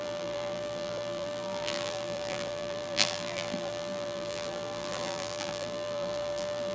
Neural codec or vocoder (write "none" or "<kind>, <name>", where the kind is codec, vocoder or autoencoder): vocoder, BigVGAN v2